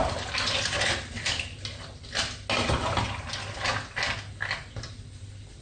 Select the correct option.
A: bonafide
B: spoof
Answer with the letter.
A